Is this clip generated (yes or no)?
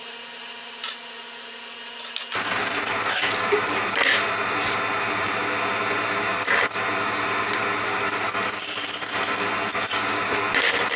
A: no